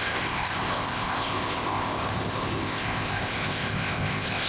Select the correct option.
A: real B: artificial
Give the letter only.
B